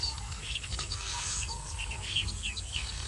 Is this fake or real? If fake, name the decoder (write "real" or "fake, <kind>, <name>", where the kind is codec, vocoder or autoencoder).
fake, codec, SNAC